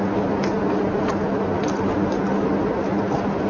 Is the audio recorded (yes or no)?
yes